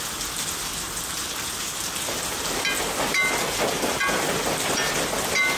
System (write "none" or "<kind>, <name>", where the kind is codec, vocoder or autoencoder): none